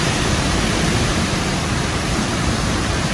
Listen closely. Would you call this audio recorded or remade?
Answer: remade